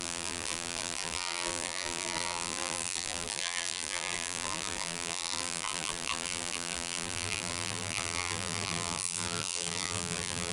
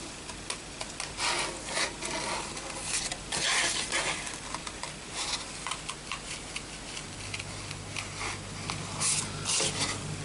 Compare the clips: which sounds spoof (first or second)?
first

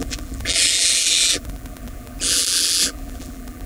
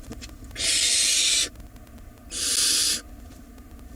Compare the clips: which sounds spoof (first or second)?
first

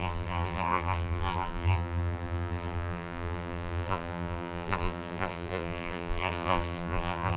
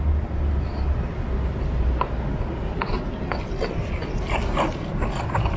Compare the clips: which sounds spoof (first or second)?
first